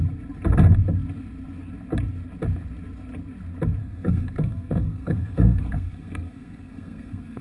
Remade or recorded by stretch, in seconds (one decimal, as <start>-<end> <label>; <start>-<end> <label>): 0.0-3.8 recorded; 3.8-7.4 remade